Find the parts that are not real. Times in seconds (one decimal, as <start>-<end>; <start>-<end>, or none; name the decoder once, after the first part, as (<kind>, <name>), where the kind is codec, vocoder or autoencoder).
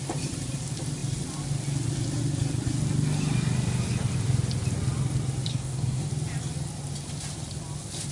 5.5-6.1 (codec, SNAC)